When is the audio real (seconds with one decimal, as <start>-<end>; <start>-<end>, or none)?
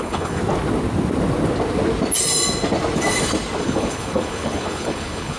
0.4-3.6